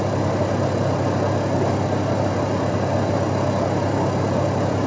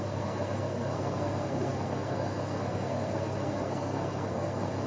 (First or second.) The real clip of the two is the first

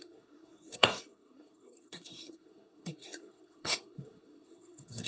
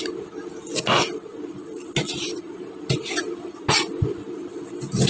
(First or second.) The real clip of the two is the second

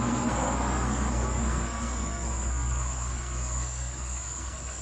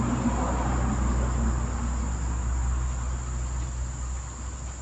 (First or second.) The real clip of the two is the second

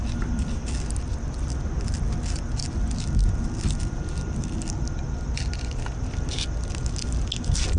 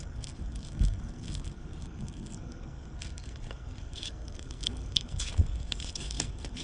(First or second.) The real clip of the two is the first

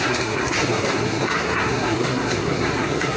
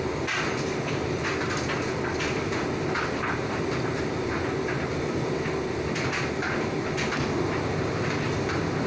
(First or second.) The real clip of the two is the second